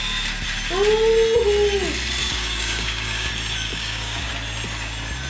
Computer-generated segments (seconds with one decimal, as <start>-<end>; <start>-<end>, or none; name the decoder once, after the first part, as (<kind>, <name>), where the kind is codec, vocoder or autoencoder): 2.2-3.3 (codec, DAC); 3.7-4.3